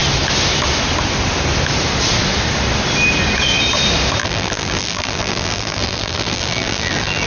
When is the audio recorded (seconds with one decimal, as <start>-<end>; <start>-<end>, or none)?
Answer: 0.0-4.2